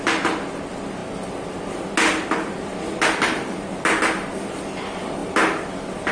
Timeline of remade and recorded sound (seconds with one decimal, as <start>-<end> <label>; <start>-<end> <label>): 0.0-6.1 recorded